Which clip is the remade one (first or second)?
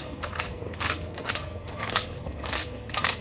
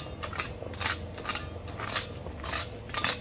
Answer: first